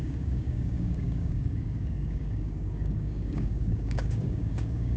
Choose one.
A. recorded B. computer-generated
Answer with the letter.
B